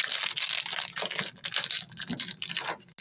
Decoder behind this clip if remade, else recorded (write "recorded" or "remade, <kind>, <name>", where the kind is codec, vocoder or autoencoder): recorded